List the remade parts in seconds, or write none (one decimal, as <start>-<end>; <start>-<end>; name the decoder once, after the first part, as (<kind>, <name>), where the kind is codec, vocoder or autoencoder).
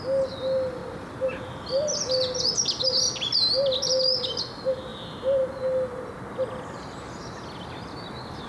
none